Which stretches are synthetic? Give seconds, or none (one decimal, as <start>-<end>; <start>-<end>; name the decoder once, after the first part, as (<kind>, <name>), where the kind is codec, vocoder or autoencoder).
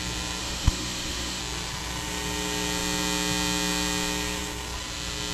0.4-1.4 (autoencoder, DAC-VAE)